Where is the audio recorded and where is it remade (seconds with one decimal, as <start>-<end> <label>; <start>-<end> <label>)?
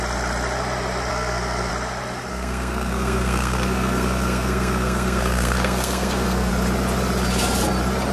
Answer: 0.0-1.1 recorded; 1.1-1.7 remade; 1.7-2.3 recorded; 2.3-6.5 remade; 6.5-8.1 recorded